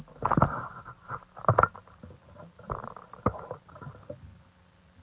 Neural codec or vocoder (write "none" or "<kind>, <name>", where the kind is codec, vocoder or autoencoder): none